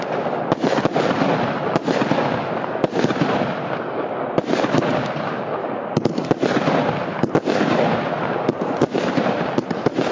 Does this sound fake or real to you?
real